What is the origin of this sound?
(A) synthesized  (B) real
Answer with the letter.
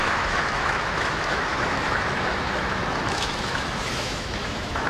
A